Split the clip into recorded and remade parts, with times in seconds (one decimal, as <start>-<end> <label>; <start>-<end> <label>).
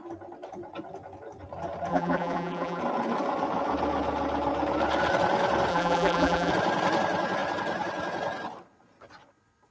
0.0-1.9 recorded; 1.9-2.8 remade; 2.8-5.7 recorded; 5.7-6.5 remade; 6.5-9.7 recorded